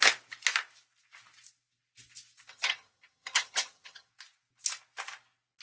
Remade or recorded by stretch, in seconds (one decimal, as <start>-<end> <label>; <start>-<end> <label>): 0.0-2.5 recorded; 2.5-4.1 remade; 4.1-5.6 recorded